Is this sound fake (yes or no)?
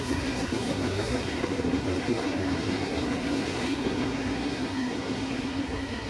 yes